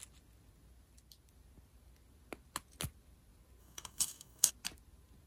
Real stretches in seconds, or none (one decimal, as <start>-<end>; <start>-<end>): 0.0-3.6; 4.5-5.3

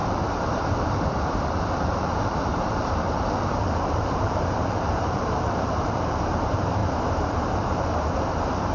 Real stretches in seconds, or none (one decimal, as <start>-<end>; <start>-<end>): 6.8-7.7

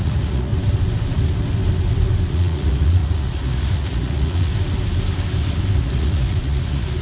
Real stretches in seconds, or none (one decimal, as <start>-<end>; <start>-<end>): 0.5-2.3; 4.5-5.8

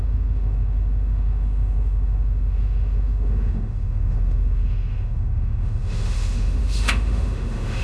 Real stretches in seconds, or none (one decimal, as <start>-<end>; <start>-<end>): none

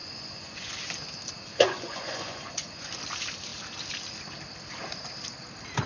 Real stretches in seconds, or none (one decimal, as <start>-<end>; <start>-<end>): 0.7-1.5; 2.9-5.9